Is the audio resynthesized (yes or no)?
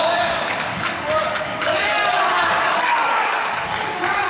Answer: yes